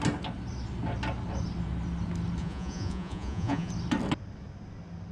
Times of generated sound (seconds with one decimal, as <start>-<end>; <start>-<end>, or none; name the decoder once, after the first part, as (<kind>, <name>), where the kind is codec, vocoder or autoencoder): 2.4-3.7 (vocoder, Vocos)